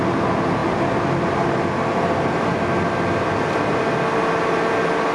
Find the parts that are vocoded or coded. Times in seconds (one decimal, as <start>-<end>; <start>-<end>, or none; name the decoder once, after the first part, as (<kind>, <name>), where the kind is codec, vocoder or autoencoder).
none